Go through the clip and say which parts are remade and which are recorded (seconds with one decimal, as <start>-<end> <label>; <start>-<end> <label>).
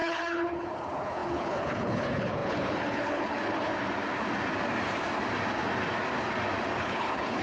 0.0-3.7 remade; 3.7-6.8 recorded; 6.8-7.4 remade